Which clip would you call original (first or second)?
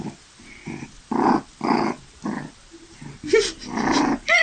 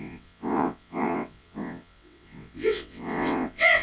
first